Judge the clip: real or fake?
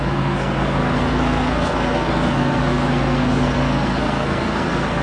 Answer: fake